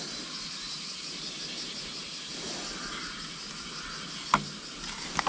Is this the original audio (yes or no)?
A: yes